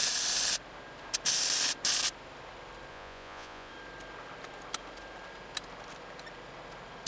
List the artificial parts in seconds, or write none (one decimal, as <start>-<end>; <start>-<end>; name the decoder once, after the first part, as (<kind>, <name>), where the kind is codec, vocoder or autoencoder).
2.9-3.7 (vocoder, Vocos)